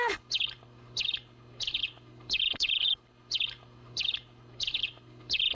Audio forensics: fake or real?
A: fake